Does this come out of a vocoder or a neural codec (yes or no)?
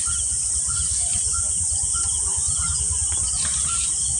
no